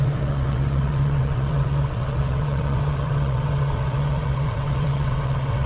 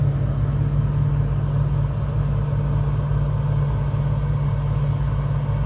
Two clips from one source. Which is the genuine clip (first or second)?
second